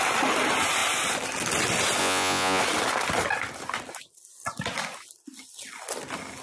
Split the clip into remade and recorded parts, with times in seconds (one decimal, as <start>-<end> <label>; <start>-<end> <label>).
0.0-2.0 recorded; 2.0-2.6 remade; 2.6-6.4 recorded